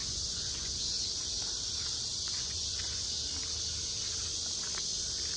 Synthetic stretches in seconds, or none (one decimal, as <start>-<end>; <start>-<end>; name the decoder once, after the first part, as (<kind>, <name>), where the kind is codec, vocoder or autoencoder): 0.0-0.8 (vocoder, Vocos); 2.1-3.3